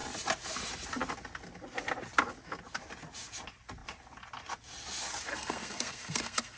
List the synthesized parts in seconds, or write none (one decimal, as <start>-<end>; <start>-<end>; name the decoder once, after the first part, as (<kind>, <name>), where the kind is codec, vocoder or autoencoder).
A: 5.3-6.6 (codec, SNAC)